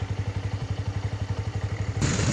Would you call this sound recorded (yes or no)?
no